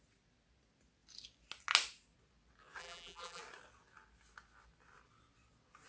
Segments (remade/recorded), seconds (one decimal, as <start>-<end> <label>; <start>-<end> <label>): 0.0-2.8 recorded; 2.8-3.4 remade; 3.4-5.9 recorded